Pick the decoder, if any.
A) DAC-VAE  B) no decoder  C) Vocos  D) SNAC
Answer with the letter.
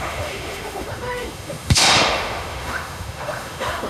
A